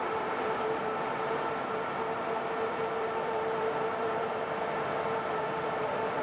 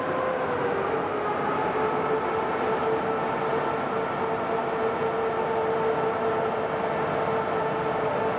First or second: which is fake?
first